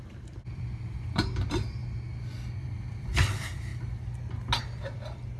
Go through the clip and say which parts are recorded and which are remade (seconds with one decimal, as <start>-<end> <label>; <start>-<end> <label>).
0.0-1.8 remade; 1.8-2.6 recorded; 2.6-3.7 remade; 3.7-4.6 recorded; 4.6-5.4 remade